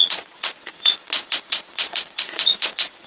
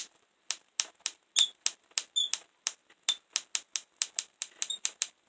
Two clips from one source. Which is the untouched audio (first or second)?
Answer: second